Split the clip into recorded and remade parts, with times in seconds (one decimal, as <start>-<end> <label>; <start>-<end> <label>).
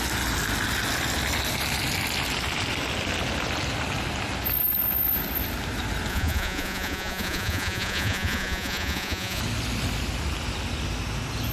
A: 0.0-6.1 recorded; 6.1-9.4 remade; 9.4-11.5 recorded